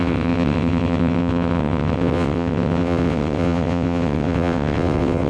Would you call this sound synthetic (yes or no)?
yes